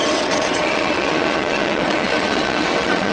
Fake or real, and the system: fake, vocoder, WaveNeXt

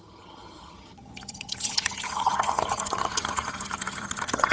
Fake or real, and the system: fake, vocoder, HiFi-GAN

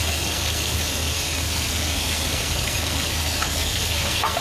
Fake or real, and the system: fake, codec, SNAC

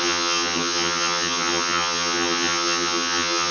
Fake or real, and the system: fake, vocoder, HiFi-GAN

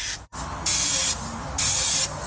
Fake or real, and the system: real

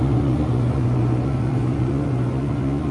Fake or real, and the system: fake, vocoder, Vocos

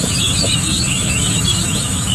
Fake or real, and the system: fake, autoencoder, DAC-VAE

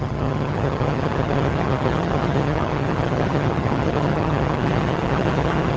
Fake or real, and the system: fake, vocoder, HiFi-GAN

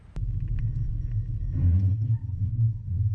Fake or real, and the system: real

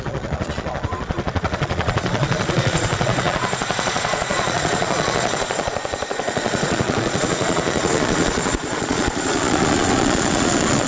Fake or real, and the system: fake, vocoder, Vocos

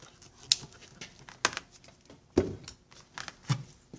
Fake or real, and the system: real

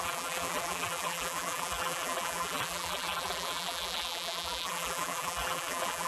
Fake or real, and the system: fake, vocoder, BigVGAN v2